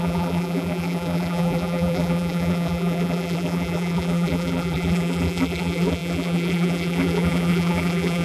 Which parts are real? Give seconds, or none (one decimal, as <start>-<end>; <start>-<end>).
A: none